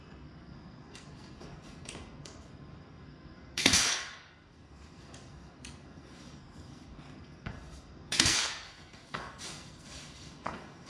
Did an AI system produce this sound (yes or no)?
yes